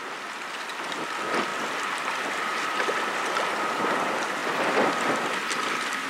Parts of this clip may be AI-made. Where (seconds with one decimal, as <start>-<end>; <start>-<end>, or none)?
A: 4.4-4.9